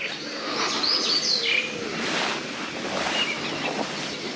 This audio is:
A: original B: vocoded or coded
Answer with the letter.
A